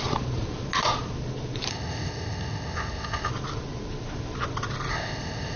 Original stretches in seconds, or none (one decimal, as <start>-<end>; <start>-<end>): 0.0-1.7; 3.3-4.9